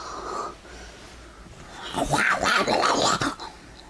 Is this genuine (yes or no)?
yes